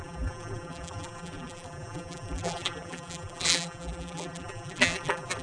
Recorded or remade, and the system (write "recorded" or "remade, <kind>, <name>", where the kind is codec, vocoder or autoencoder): remade, vocoder, BigVGAN v2